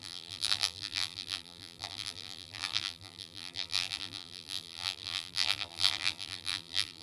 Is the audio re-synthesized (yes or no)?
yes